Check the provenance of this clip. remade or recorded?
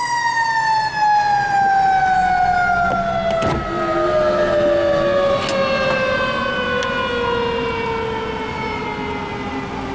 recorded